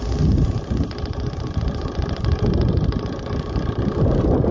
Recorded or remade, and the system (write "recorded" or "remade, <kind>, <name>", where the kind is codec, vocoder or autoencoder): recorded